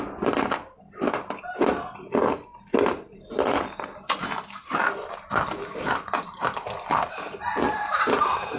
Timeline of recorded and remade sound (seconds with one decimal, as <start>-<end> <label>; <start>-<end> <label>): 0.0-8.6 recorded